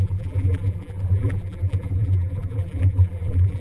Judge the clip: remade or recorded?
remade